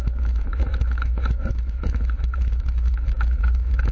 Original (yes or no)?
no